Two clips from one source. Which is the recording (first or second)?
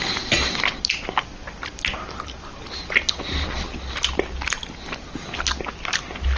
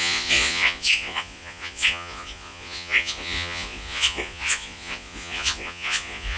first